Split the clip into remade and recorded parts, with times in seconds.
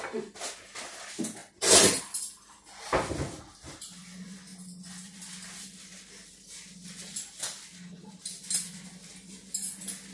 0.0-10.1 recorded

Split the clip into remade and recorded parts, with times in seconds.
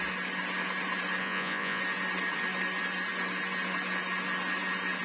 0.0-1.2 recorded; 1.2-1.8 remade; 1.8-5.0 recorded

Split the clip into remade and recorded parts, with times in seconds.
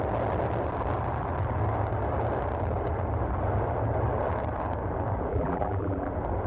0.0-5.3 recorded; 5.3-6.1 remade; 6.1-6.5 recorded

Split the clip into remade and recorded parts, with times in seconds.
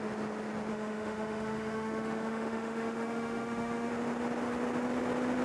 0.0-0.7 recorded; 0.7-3.9 remade; 3.9-5.4 recorded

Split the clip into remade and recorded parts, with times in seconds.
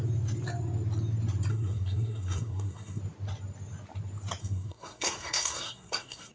0.0-1.5 recorded; 1.5-3.0 remade; 3.0-4.4 recorded; 4.4-6.3 remade